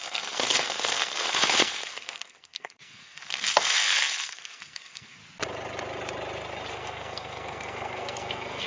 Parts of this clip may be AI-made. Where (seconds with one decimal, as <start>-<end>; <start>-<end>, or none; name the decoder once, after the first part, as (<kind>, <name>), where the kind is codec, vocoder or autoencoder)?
0.0-5.2 (codec, SNAC); 6.7-8.7